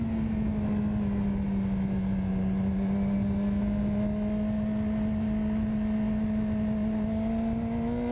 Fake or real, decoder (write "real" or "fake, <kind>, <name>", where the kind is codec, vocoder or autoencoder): real